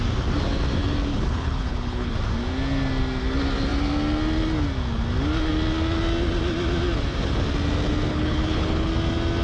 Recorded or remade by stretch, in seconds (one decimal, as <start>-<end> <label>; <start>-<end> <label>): 0.0-1.1 recorded; 1.1-2.1 remade; 2.1-8.1 recorded; 8.1-8.9 remade; 8.9-9.4 recorded